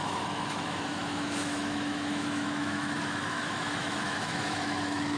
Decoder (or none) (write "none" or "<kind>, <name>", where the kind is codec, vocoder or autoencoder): autoencoder, DAC-VAE